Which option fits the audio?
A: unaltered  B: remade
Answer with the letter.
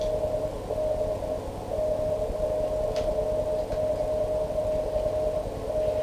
A